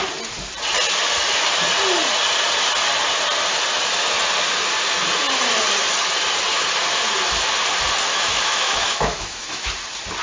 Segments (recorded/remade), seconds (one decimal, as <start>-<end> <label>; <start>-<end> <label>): 0.0-8.1 recorded; 8.1-9.7 remade; 9.7-10.2 recorded